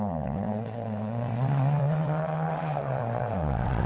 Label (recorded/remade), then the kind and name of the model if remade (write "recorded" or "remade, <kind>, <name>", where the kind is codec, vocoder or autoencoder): remade, vocoder, WaveNeXt